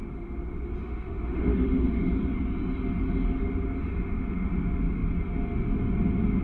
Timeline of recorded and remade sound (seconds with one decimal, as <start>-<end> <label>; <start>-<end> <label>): 0.0-0.8 recorded; 0.8-2.1 remade; 2.1-6.4 recorded